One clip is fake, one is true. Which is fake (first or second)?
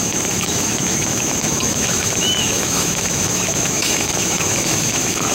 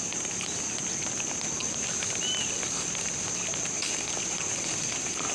first